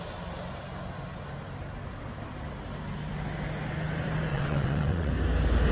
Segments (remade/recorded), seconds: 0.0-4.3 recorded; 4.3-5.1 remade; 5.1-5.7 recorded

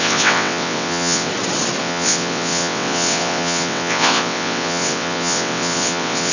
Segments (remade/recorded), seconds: 0.0-1.3 remade; 1.3-1.8 recorded; 1.8-6.3 remade

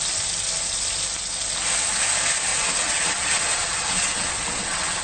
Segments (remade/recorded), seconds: 0.0-2.5 recorded; 2.5-5.0 remade

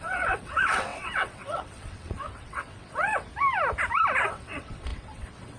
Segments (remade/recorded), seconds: 0.0-3.3 remade; 3.3-4.2 recorded; 4.2-5.6 remade